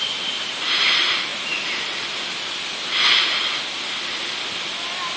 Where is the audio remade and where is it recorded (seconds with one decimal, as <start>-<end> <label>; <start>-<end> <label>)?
0.0-5.2 recorded